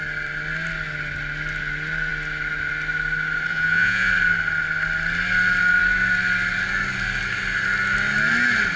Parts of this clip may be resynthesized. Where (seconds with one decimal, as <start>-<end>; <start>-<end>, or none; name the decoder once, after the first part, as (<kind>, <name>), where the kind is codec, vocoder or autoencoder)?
3.5-4.1 (vocoder, Vocos)